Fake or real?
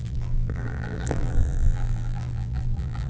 fake